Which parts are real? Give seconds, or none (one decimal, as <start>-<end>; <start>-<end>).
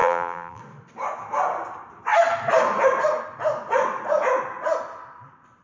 0.6-5.6